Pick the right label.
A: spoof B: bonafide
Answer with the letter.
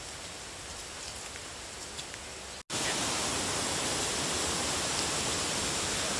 B